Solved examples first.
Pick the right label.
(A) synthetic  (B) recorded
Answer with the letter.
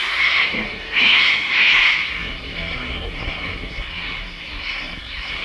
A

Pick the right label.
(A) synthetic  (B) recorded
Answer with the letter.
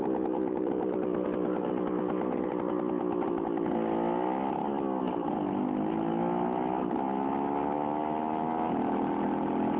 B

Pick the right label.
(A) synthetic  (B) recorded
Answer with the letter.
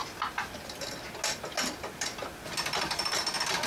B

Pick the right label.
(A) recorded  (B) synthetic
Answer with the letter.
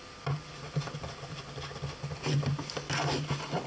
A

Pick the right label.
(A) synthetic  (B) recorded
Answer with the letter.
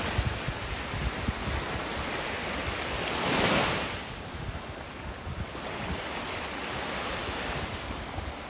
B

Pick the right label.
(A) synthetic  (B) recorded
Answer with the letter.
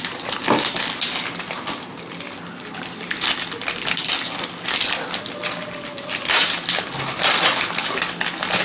B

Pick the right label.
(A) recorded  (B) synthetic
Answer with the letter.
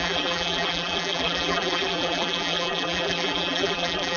B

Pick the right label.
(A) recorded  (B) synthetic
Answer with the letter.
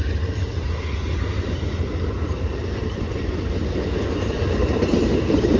B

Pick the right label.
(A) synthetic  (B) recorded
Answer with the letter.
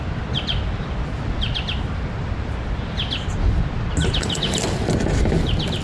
B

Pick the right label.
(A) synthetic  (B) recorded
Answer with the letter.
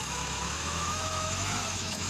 A